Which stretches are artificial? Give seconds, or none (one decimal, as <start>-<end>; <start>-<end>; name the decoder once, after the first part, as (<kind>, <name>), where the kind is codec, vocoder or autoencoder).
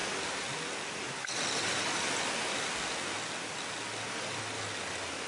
none